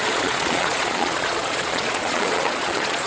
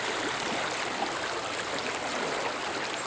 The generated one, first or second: first